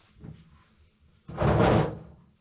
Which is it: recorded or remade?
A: recorded